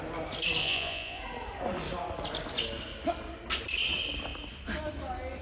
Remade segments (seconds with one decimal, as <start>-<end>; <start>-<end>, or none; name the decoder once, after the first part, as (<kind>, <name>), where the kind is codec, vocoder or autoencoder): 0.6-1.2 (vocoder, Vocos)